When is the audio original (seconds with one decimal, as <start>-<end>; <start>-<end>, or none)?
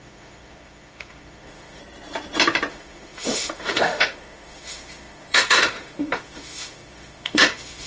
1.8-2.7